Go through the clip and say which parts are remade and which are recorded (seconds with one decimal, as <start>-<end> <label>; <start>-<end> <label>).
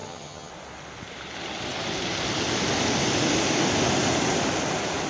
0.0-0.5 remade; 0.5-5.1 recorded